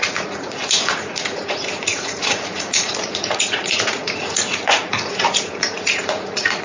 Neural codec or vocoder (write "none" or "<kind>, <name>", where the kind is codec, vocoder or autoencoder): vocoder, Vocos